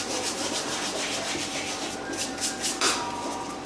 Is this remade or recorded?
recorded